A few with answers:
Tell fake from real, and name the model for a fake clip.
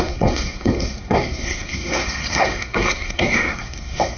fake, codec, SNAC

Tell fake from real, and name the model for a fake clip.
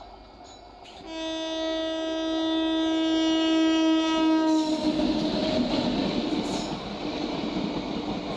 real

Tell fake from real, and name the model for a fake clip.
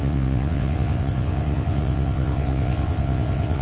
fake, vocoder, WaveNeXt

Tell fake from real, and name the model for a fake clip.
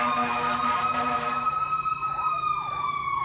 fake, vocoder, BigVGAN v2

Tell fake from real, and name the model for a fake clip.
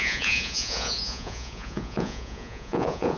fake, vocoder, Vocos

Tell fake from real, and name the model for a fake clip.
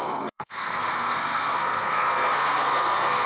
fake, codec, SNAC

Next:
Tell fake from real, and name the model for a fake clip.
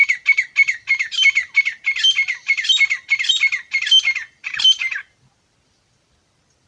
real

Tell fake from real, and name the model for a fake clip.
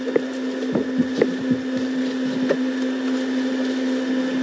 real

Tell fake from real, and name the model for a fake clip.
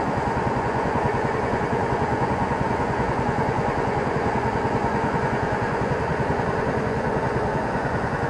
fake, vocoder, Vocos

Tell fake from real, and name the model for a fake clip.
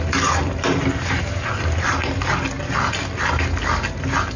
real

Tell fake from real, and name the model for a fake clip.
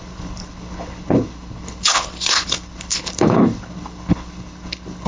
fake, codec, HILCodec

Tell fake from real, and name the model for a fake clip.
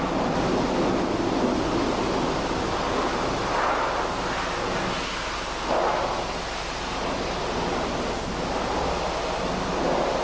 real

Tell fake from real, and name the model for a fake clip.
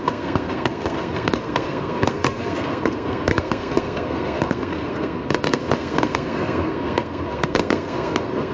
fake, codec, SNAC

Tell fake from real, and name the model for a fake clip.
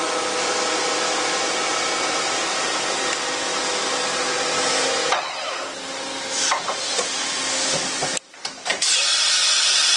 real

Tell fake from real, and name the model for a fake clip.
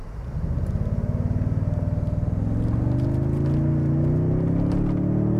real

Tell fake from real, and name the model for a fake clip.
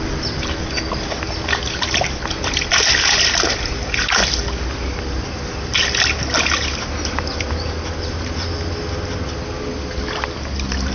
real